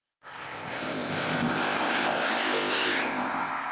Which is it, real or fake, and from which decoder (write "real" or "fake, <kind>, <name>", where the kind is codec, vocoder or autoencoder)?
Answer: fake, codec, ZipCodec